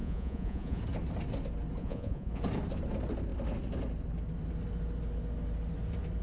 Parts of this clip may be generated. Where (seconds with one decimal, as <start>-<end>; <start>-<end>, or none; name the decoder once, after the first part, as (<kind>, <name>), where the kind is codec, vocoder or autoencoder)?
0.0-0.8 (vocoder, Vocos); 1.8-2.4